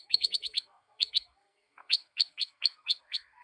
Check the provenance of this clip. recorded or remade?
remade